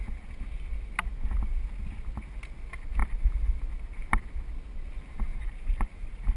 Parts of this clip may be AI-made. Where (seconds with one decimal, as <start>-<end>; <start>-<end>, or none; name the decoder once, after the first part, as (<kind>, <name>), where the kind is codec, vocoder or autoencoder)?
3.0-3.6 (vocoder, BigVGAN v2); 5.3-6.4